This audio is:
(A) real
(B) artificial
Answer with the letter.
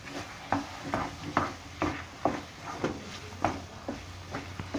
A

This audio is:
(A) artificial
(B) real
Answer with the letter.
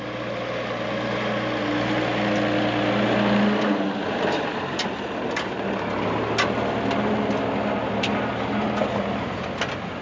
B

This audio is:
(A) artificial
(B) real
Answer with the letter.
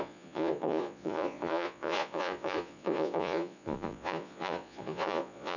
A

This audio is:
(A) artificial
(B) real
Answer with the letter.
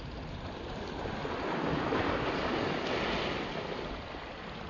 B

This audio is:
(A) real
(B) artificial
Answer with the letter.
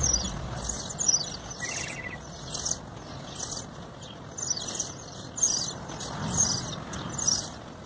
A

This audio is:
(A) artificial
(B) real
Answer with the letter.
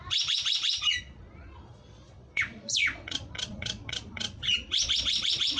A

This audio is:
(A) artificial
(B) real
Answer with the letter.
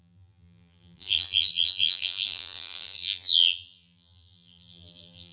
A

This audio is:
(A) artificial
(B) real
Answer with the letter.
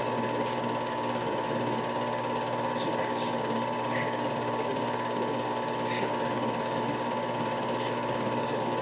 A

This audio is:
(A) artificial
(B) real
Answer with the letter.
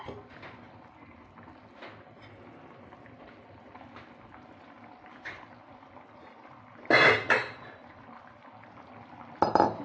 B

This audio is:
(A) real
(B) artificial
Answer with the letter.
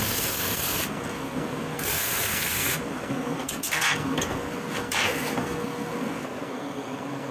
B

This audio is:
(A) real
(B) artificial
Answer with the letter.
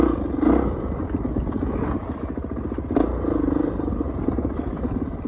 A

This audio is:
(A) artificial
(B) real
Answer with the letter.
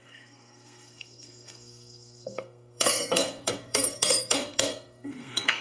A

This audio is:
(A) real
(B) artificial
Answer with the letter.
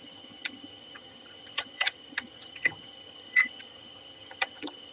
B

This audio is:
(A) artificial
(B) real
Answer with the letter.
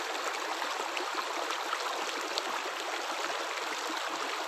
B